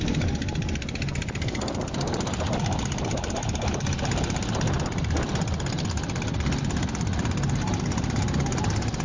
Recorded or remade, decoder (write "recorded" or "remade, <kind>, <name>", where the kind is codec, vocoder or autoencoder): recorded